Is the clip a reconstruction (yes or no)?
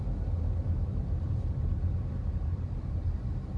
no